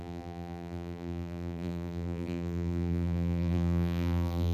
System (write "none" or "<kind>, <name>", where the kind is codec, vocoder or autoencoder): vocoder, BigVGAN v2